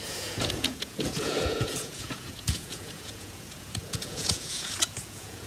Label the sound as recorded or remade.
remade